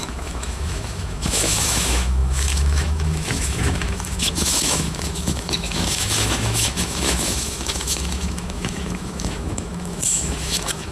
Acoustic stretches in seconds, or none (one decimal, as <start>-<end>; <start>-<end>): none